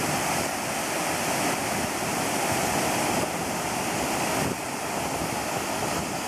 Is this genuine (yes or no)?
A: yes